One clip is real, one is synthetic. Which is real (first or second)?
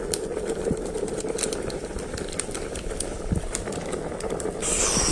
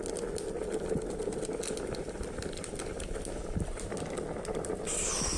second